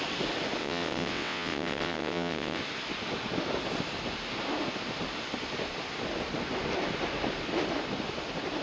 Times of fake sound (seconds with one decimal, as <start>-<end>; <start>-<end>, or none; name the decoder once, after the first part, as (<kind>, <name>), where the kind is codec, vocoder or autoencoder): 0.6-2.6 (vocoder, WaveNeXt)